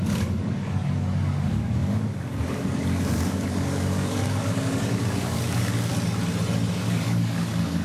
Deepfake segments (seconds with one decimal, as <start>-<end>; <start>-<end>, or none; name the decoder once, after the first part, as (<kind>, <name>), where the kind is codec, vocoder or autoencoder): 0.0-5.9 (codec, DAC); 6.7-7.8